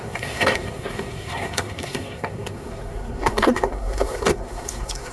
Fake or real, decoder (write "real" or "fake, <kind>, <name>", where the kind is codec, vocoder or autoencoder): fake, codec, SNAC